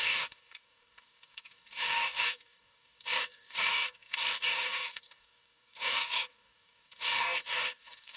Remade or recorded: remade